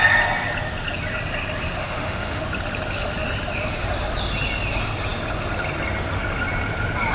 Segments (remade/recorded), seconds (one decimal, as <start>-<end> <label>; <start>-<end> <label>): 0.0-1.8 recorded; 1.8-2.4 remade; 2.4-7.1 recorded